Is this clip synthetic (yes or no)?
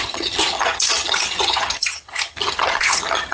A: yes